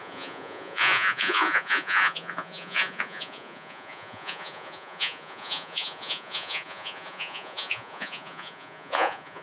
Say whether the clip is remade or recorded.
remade